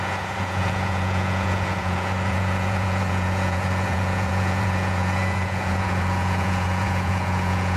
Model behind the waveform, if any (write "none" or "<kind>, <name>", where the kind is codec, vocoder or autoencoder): vocoder, Vocos